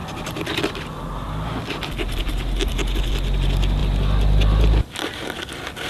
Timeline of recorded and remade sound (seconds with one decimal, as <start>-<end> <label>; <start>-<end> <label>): 0.0-5.9 recorded